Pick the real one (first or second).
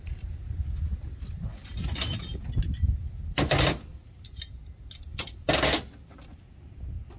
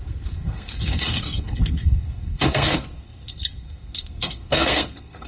first